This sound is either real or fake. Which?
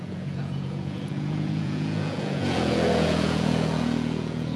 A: fake